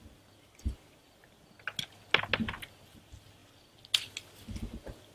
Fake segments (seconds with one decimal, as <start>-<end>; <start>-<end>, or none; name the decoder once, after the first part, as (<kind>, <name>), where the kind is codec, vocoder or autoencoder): none